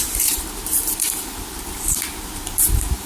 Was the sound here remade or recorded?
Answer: remade